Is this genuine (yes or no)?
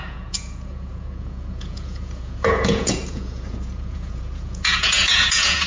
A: no